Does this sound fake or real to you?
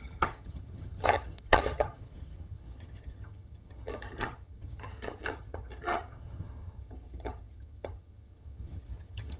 fake